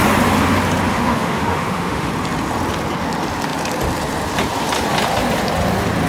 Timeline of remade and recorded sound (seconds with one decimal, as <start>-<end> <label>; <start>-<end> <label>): 0.0-0.9 recorded; 0.9-2.1 remade; 2.1-6.1 recorded